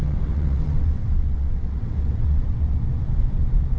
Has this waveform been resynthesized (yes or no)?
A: yes